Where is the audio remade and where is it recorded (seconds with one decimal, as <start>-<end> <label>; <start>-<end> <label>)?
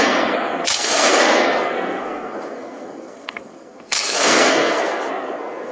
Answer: 0.0-5.7 remade